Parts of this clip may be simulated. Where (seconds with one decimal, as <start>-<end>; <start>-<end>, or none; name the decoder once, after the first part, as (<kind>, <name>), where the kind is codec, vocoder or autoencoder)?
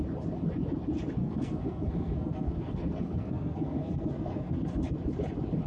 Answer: 1.2-4.5 (codec, SNAC)